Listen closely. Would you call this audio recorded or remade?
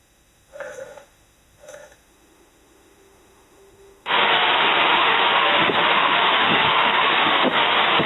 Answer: remade